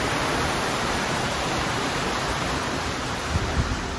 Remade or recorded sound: remade